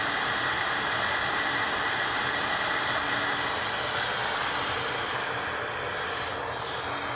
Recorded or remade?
recorded